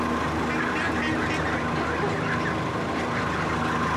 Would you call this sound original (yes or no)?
yes